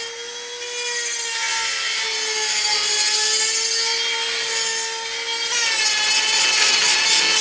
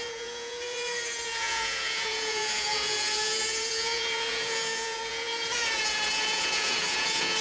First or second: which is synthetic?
second